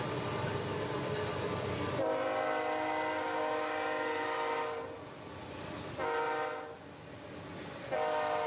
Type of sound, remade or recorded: recorded